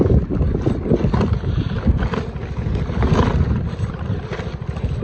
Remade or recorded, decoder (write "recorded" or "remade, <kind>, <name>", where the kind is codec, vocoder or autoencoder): recorded